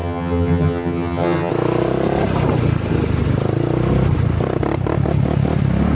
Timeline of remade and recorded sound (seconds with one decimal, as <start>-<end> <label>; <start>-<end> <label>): 0.0-1.5 remade; 1.5-5.9 recorded